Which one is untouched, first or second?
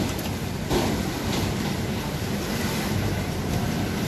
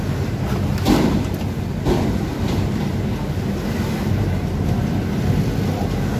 second